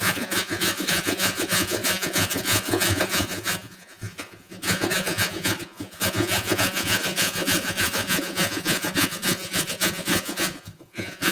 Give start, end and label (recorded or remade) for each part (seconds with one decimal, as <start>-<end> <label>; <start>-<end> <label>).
0.0-11.3 remade